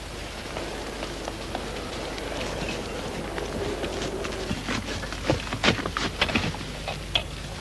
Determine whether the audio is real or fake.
real